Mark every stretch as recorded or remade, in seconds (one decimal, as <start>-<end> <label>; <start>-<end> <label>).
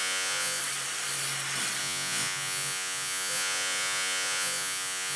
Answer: 0.0-0.6 remade; 0.6-1.8 recorded; 1.8-5.2 remade